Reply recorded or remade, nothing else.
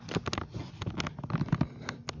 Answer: recorded